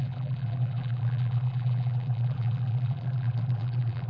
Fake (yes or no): yes